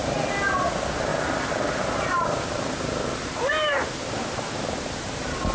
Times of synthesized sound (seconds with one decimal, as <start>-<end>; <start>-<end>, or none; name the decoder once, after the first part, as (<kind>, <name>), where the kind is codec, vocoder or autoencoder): 0.6-1.1 (vocoder, BigVGAN v2); 1.8-5.5